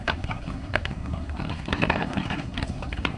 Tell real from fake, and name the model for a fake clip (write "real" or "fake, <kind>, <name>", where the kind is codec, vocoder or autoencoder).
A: fake, codec, SNAC